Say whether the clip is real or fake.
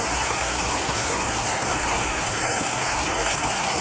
fake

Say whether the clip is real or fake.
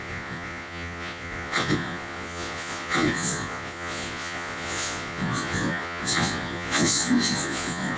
fake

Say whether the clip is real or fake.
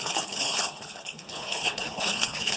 fake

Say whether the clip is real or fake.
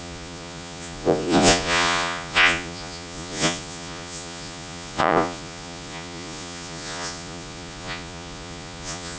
fake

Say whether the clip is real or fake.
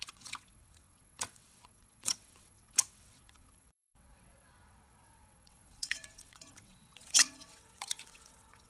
fake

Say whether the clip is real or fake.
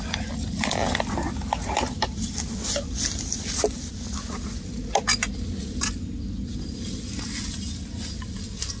real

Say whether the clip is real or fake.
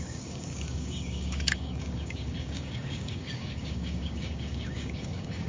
fake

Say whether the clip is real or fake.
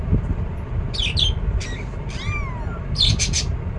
real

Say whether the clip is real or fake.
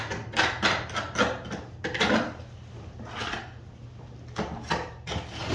real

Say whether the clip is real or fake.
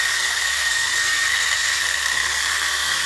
fake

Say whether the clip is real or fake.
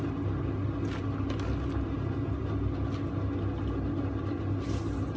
real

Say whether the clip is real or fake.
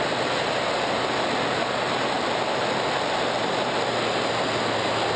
real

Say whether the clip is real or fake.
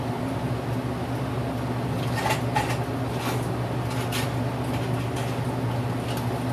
real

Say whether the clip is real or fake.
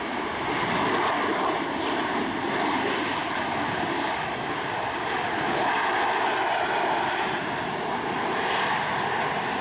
real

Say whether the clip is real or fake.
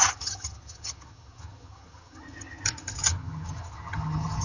fake